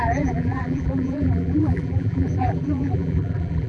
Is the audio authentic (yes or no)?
no